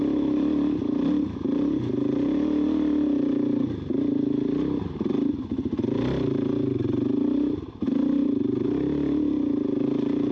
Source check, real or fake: real